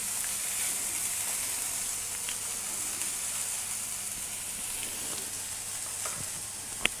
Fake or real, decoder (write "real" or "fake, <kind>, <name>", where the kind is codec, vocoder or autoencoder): real